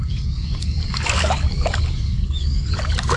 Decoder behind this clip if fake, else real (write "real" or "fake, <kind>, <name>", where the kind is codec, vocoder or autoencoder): fake, codec, DAC